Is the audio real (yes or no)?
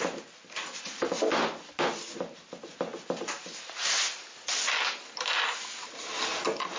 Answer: yes